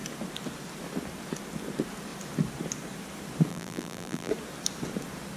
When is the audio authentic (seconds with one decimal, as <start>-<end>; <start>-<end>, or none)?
0.0-3.5; 4.3-5.4